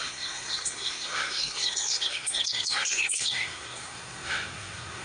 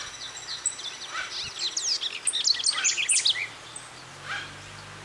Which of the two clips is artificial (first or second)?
first